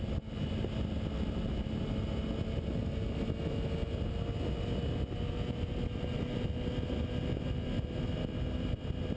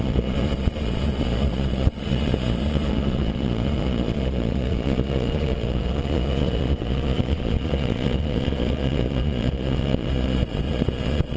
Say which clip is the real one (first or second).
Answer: first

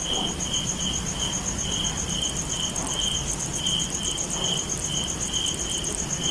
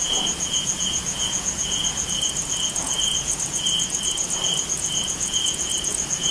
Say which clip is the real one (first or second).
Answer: first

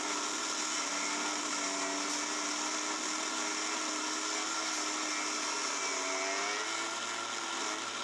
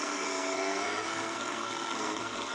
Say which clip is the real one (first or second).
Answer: first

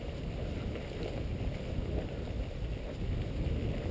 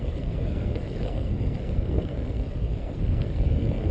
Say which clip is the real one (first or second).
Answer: first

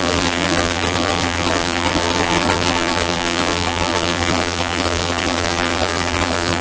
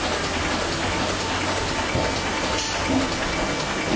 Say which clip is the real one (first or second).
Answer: second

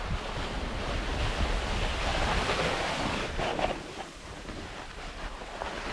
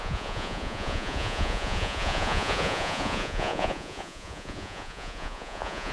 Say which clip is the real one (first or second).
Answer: first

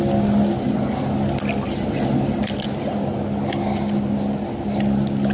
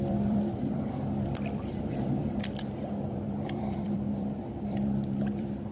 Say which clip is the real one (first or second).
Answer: first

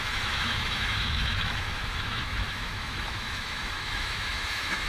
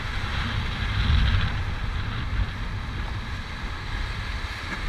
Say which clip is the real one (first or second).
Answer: second